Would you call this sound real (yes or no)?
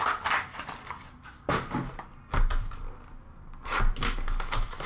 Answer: yes